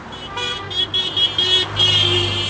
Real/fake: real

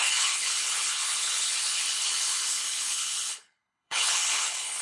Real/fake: fake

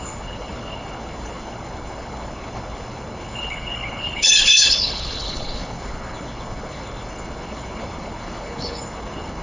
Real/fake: fake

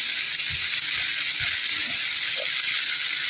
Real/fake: real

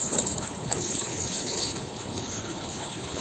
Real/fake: fake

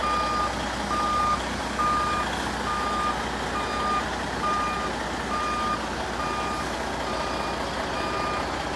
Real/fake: real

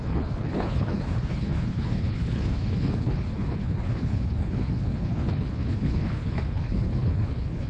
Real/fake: fake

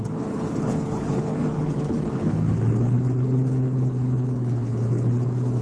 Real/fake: fake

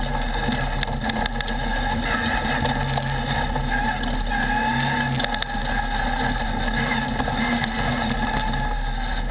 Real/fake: real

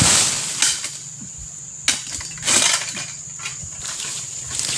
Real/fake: real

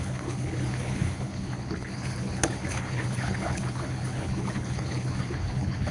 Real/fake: fake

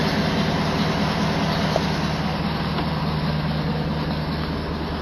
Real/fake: real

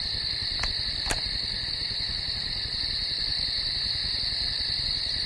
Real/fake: real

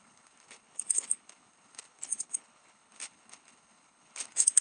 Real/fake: fake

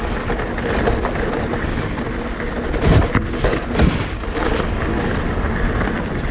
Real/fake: real